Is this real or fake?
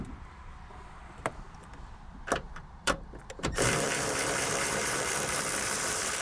fake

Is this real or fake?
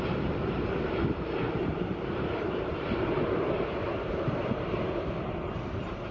fake